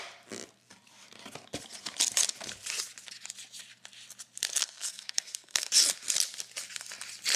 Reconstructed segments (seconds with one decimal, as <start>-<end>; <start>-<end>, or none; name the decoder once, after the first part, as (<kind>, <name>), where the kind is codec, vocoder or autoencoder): 4.6-5.7 (codec, SNAC)